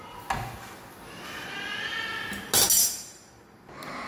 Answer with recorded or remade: recorded